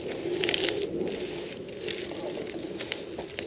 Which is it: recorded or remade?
recorded